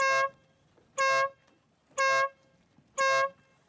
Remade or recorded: recorded